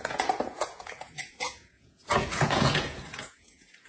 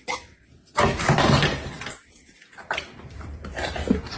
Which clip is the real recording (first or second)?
second